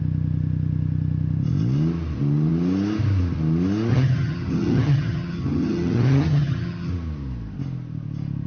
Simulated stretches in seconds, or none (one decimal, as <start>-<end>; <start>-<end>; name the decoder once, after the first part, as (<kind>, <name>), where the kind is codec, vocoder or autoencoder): 3.9-6.9 (vocoder, HiFi-GAN)